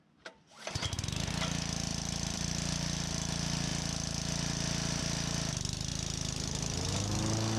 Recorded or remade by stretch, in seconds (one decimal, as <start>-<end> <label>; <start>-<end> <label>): 0.0-1.9 recorded; 1.9-2.5 remade; 2.5-7.6 recorded